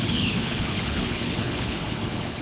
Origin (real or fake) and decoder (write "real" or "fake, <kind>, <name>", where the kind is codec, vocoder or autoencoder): fake, codec, HILCodec